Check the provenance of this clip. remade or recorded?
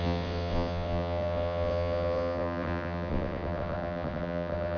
remade